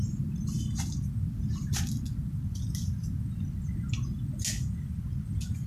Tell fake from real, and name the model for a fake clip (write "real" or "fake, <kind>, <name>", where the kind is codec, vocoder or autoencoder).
real